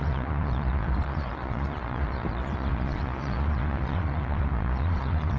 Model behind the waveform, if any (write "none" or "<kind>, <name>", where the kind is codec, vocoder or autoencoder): vocoder, Vocos